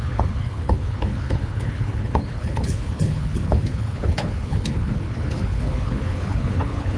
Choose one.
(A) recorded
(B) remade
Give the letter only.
B